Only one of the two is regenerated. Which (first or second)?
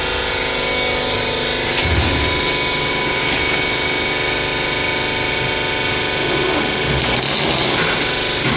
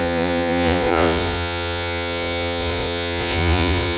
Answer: second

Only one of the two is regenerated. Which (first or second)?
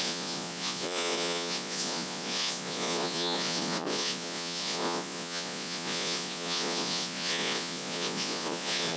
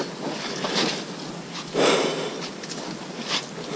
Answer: first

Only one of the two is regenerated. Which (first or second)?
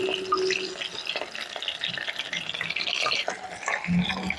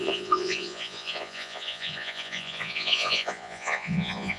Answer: second